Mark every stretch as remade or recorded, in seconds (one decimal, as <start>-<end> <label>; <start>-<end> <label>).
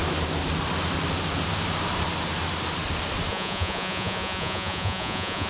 0.0-3.3 recorded; 3.3-5.5 remade